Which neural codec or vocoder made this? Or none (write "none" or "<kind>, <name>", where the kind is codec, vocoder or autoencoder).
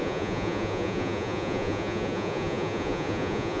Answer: vocoder, Vocos